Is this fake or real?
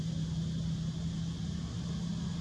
real